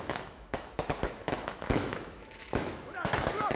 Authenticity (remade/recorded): remade